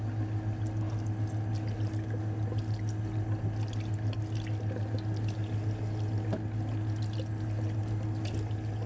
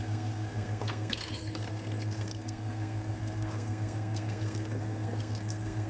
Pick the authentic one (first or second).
first